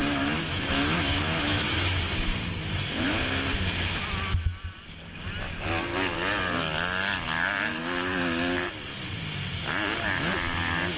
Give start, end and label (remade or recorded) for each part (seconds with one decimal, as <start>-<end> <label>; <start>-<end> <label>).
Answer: 0.0-2.0 remade; 2.0-11.0 recorded